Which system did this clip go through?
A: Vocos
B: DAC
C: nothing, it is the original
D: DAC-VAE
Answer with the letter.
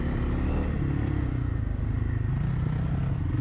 C